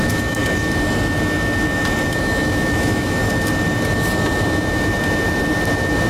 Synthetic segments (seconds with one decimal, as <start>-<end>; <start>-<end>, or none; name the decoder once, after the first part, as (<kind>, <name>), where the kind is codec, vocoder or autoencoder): 0.0-0.4 (autoencoder, DAC-VAE); 2.2-3.2